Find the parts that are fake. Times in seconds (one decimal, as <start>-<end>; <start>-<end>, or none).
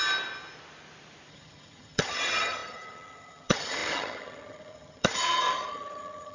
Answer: 1.3-6.3